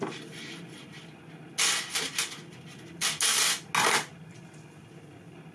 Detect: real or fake real